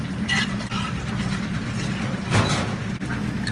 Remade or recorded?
recorded